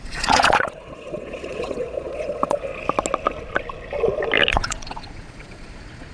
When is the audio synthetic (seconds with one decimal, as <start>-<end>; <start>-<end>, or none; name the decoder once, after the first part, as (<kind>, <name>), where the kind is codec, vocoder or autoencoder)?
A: 0.0-2.7 (vocoder, Vocos); 4.5-6.1